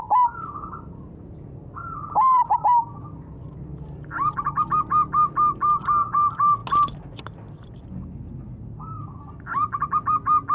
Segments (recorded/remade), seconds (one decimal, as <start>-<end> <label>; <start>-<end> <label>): 0.0-10.5 recorded